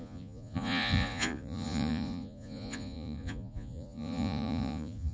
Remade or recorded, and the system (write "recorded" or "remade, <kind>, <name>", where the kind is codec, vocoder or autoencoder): remade, vocoder, Vocos